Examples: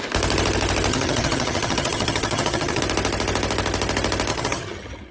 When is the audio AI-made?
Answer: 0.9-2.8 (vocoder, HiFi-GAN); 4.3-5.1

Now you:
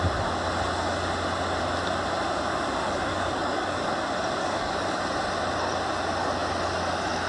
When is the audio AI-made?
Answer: 3.1-3.9 (codec, DAC); 4.4-5.0

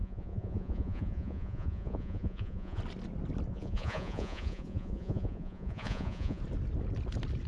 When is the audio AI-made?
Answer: 0.0-2.8 (vocoder, Vocos); 3.5-6.4